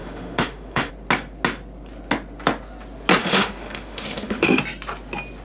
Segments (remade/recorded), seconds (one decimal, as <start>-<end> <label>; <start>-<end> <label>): 0.0-0.9 remade; 0.9-3.2 recorded; 3.2-4.6 remade; 4.6-5.4 recorded